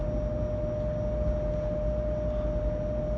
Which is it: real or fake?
real